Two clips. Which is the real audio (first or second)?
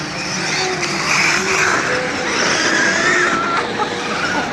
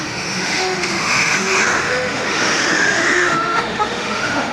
first